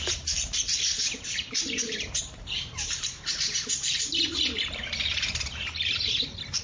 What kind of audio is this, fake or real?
fake